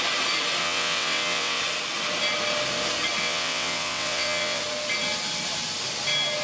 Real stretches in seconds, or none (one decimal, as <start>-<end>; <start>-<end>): 0.0-0.6; 1.6-3.2; 4.6-6.4